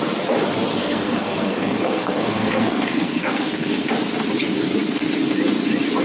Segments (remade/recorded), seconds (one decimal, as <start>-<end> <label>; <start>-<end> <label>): 0.0-0.8 recorded; 0.8-3.9 remade; 3.9-6.0 recorded